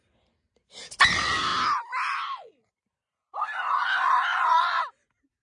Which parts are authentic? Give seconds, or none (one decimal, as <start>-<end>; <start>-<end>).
0.0-4.3; 4.8-5.4